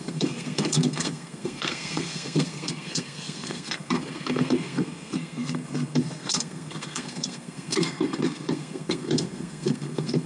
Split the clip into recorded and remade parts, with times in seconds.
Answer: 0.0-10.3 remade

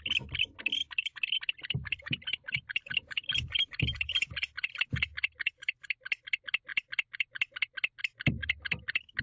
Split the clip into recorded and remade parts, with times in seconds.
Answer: 0.0-0.8 recorded; 0.8-4.8 remade; 4.8-9.2 recorded

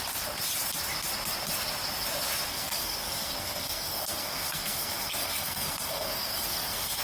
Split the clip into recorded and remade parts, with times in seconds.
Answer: 0.0-2.5 recorded; 2.5-7.0 remade

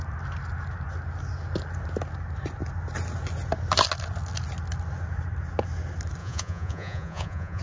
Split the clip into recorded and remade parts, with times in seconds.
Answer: 0.0-6.2 recorded; 6.2-7.6 remade

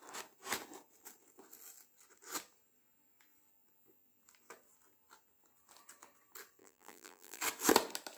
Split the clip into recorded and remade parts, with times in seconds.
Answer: 0.0-6.6 recorded; 6.6-7.4 remade; 7.4-8.2 recorded

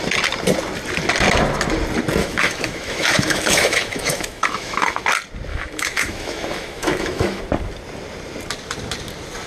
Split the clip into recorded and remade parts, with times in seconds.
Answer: 0.0-2.2 recorded; 2.2-5.0 remade; 5.0-5.5 recorded; 5.5-7.4 remade; 7.4-9.5 recorded

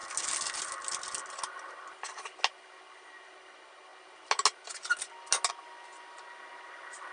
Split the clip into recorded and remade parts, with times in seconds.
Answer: 0.0-7.1 recorded